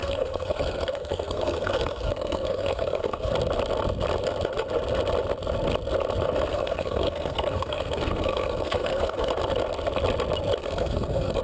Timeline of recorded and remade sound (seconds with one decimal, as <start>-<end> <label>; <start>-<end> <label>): 0.0-3.3 remade; 3.3-6.5 recorded; 6.5-9.3 remade; 9.3-10.6 recorded; 10.6-11.4 remade